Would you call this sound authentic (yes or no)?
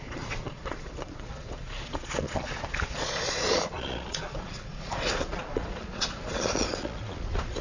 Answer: no